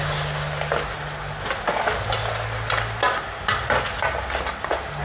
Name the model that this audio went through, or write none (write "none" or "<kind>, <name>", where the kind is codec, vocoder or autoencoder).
none